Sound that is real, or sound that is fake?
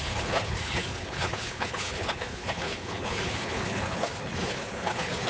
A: fake